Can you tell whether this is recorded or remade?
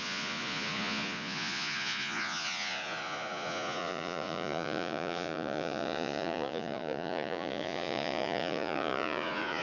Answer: remade